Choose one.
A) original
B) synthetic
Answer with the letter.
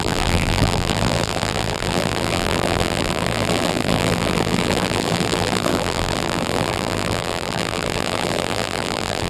B